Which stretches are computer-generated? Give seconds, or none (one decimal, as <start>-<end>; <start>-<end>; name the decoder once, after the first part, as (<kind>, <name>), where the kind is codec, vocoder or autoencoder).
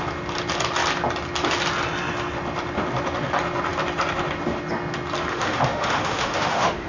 5.3-6.9 (autoencoder, DAC-VAE)